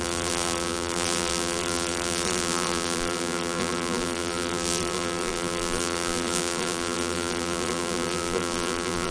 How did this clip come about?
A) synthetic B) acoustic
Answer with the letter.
A